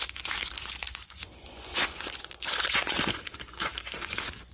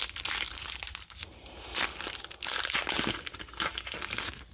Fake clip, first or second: first